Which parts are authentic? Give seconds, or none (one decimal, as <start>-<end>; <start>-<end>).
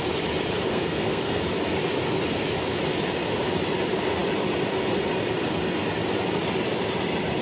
0.0-0.7; 1.4-7.4